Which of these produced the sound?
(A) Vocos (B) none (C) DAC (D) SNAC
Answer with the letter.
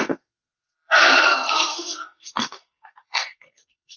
D